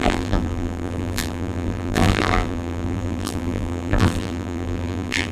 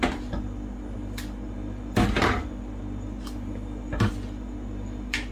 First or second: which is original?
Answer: second